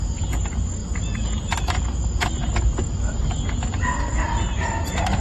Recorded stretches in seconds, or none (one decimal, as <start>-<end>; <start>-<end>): 0.0-5.2